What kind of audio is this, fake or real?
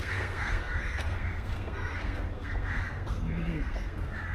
fake